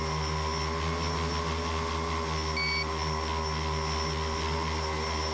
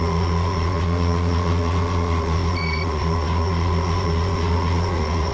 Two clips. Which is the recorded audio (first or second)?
first